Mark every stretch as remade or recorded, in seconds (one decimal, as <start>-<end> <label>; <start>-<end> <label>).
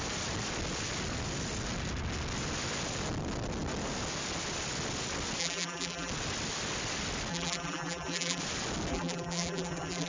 0.0-5.4 recorded; 5.4-6.1 remade; 6.1-7.3 recorded; 7.3-8.4 remade; 8.4-8.9 recorded; 8.9-10.1 remade